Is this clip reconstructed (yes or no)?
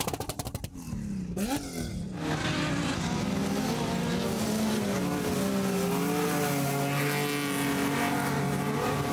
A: no